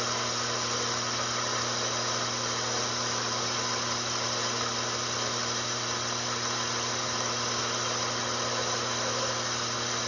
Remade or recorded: recorded